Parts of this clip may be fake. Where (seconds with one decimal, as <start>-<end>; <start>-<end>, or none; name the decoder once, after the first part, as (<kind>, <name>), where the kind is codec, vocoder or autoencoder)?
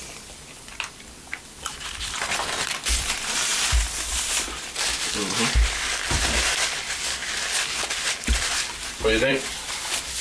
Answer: 0.0-10.2 (vocoder, BigVGAN v2)